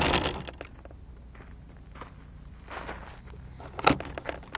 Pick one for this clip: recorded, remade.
recorded